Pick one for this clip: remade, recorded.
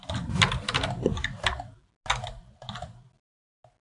recorded